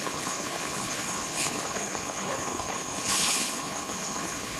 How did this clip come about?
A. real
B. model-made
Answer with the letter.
B